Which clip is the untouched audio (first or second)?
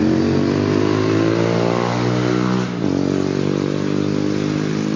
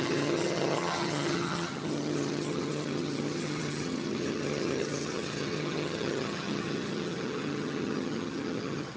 first